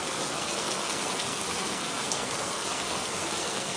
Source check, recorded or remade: remade